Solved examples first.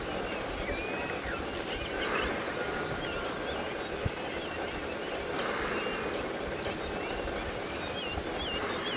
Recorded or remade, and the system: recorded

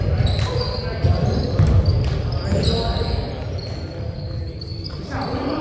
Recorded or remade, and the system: recorded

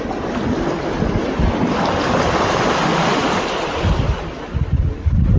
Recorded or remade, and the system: recorded